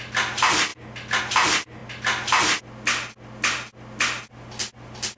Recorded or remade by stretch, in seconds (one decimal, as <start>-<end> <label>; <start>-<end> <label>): 0.0-5.2 recorded